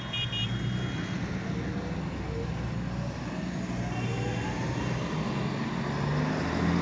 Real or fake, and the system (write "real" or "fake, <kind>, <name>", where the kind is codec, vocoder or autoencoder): real